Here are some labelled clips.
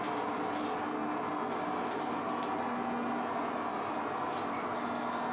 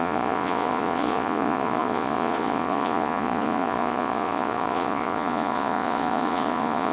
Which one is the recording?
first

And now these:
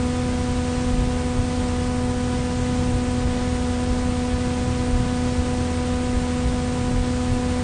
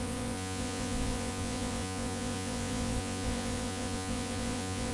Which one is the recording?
first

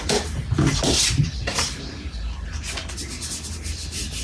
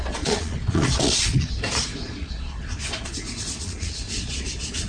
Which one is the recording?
first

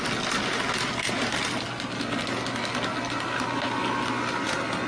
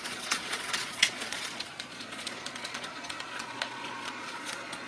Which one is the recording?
first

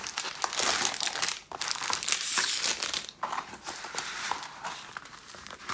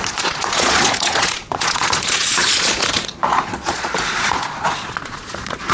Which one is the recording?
first